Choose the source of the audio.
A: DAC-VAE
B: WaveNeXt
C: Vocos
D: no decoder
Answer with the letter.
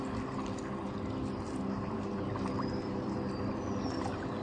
D